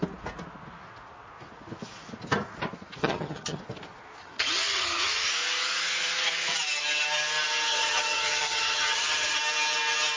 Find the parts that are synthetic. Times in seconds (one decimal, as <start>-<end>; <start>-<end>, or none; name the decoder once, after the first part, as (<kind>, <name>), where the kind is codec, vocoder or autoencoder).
3.0-3.6 (vocoder, HiFi-GAN); 4.2-5.3; 7.7-9.4